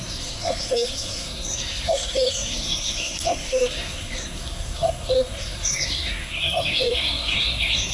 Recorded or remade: remade